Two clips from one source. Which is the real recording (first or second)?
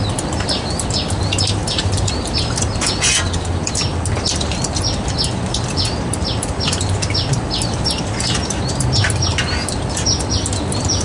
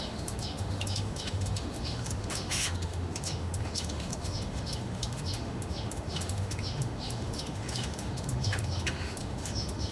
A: first